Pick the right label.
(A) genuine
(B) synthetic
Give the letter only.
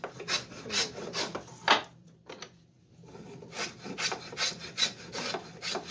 A